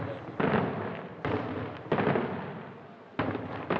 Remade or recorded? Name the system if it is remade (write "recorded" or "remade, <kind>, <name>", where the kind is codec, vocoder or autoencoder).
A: recorded